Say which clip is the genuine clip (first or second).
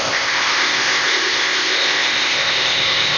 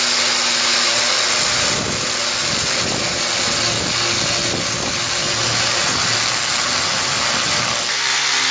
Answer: second